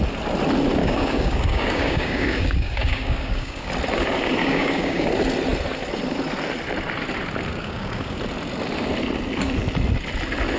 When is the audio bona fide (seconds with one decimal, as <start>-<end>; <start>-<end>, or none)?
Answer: 0.0-0.8; 3.7-4.4; 5.1-7.5; 8.2-10.6